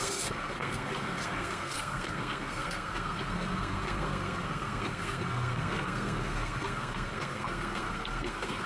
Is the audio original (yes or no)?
no